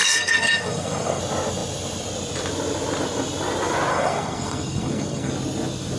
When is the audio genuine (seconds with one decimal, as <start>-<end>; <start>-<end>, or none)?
1.2-3.9; 5.3-6.0